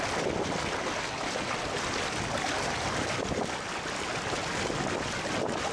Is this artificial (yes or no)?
no